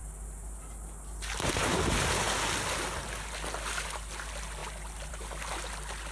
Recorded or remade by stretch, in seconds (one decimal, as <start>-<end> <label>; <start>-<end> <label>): 0.0-6.1 recorded